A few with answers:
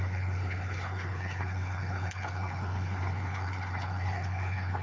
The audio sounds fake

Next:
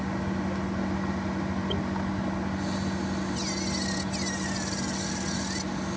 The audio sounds real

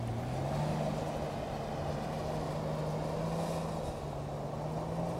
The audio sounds real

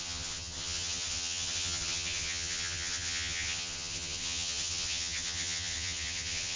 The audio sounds fake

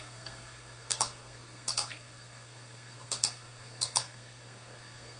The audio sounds fake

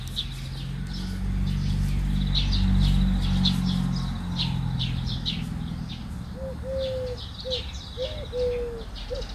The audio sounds real